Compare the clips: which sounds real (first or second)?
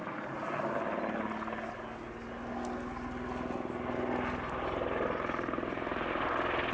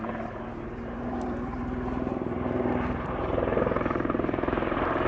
first